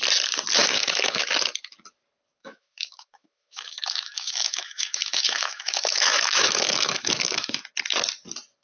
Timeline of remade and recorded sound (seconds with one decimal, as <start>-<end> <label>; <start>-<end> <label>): 0.0-0.6 recorded; 0.6-1.2 remade; 1.2-2.4 recorded; 2.4-7.6 remade; 7.6-8.6 recorded

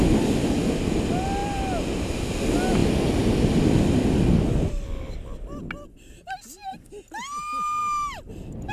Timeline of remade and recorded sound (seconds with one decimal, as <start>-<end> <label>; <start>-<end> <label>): 0.0-8.7 recorded

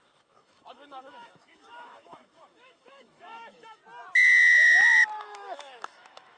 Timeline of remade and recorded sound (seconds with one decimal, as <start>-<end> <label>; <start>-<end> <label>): 0.0-3.8 remade; 3.8-5.2 recorded; 5.2-6.4 remade

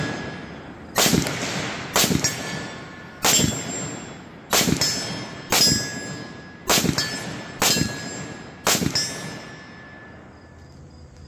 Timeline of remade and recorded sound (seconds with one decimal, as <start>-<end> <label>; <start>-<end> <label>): 0.0-11.3 recorded

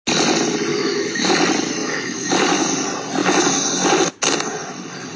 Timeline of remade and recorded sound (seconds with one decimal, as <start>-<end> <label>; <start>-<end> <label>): 0.0-0.7 recorded; 0.7-1.3 remade; 1.3-1.8 recorded; 1.8-2.3 remade; 2.3-5.2 recorded

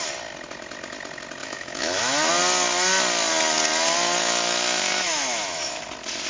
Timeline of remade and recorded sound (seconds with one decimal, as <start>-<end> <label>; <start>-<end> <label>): 0.0-1.4 recorded; 1.4-2.3 remade; 2.3-4.2 recorded; 4.2-5.8 remade; 5.8-6.3 recorded

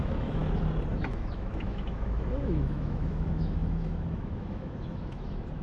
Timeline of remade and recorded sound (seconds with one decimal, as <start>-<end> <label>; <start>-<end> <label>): 0.0-0.4 remade; 0.4-0.9 recorded; 0.9-5.6 remade

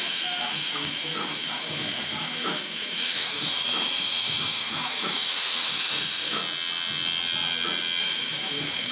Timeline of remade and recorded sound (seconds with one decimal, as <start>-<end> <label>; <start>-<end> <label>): 0.0-6.4 remade; 6.4-8.0 recorded; 8.0-8.9 remade